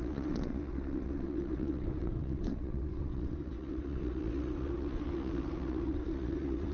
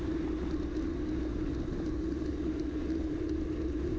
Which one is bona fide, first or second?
second